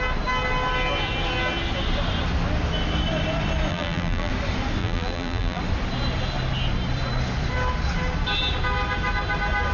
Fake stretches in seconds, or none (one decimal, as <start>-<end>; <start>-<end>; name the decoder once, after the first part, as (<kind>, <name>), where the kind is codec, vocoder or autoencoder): 3.7-4.3 (vocoder, BigVGAN v2); 4.8-5.6